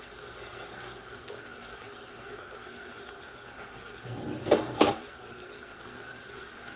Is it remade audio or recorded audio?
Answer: remade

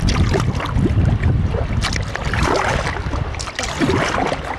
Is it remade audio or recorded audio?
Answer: recorded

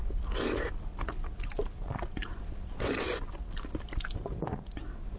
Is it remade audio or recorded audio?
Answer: recorded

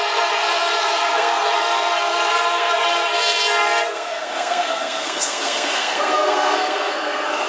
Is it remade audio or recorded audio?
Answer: remade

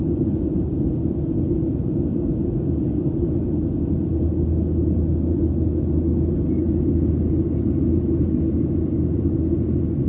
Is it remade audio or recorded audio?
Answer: recorded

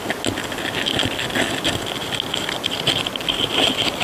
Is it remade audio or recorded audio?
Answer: recorded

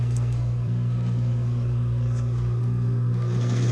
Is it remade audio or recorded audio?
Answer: remade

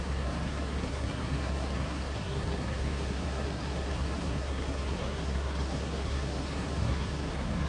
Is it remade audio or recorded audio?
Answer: remade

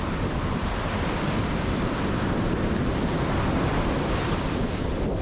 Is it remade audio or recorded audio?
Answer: recorded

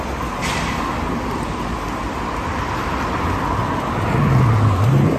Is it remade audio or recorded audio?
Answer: recorded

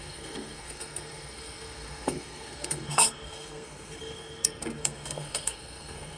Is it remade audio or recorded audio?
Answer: remade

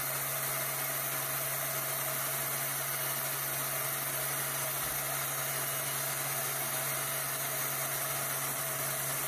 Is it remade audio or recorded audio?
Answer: recorded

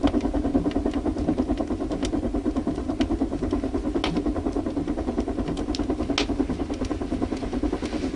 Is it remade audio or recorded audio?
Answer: recorded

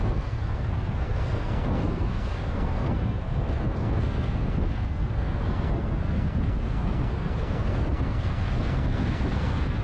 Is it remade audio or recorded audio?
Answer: remade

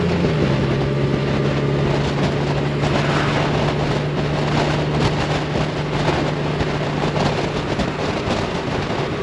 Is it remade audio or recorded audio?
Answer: recorded